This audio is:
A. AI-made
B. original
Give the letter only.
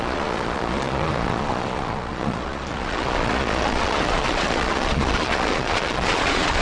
A